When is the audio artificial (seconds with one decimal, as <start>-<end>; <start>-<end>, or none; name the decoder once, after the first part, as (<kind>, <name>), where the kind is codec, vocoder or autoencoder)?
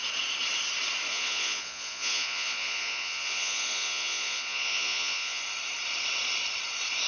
1.1-5.4 (vocoder, Vocos)